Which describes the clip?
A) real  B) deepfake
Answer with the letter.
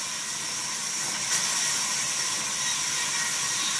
A